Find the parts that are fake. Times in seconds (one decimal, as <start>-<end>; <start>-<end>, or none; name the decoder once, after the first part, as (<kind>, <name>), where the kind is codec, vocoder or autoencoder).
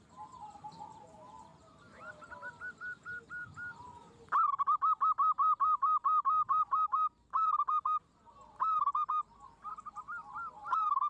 none